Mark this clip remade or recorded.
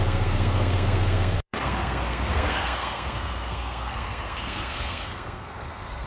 remade